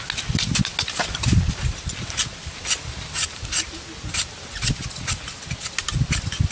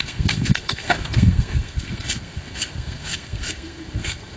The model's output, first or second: second